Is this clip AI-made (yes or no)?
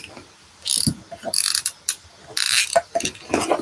no